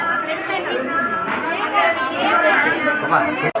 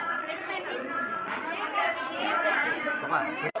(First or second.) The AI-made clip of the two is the second